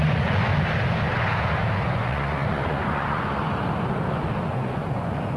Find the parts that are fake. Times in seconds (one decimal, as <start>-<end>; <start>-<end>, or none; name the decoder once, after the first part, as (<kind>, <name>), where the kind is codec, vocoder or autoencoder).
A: 0.0-0.5 (vocoder, Vocos); 1.9-3.4; 4.5-5.4